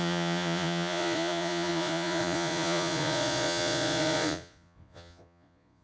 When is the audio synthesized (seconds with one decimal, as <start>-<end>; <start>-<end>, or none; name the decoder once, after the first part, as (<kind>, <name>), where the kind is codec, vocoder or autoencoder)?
0.0-5.8 (vocoder, Vocos)